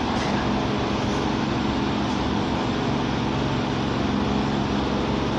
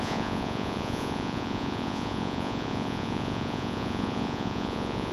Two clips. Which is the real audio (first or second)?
first